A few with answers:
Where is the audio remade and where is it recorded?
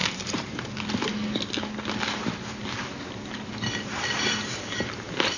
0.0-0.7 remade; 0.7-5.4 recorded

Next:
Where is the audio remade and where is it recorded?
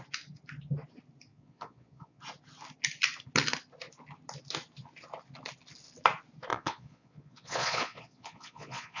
0.0-1.3 recorded; 1.3-2.2 remade; 2.2-6.5 recorded; 6.5-9.0 remade